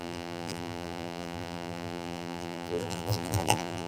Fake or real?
fake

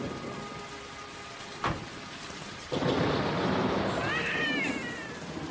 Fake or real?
real